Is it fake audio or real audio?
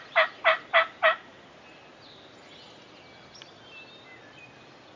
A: real